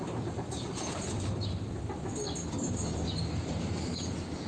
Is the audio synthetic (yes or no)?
yes